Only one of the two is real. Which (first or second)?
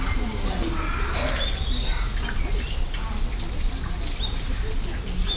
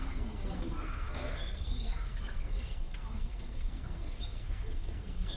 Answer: first